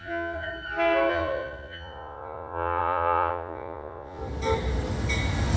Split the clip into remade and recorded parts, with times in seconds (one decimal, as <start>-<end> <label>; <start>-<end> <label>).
0.0-0.5 remade; 0.5-1.1 recorded; 1.1-4.2 remade; 4.2-5.6 recorded